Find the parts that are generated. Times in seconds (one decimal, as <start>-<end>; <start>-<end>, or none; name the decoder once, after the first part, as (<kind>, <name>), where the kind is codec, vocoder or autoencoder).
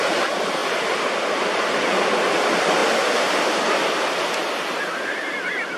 none